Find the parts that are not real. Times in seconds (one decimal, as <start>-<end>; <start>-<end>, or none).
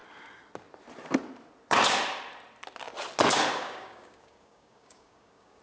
3.6-5.6